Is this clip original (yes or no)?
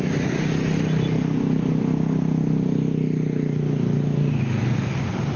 yes